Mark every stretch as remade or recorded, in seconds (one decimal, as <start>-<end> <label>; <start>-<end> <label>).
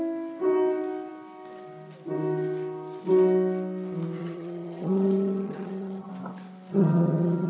0.0-4.2 recorded; 4.2-6.1 remade; 6.1-6.7 recorded; 6.7-7.5 remade